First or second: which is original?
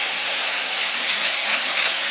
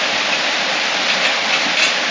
second